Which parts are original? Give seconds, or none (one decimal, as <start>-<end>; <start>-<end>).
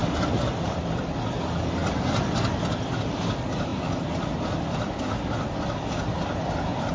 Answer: 0.0-6.9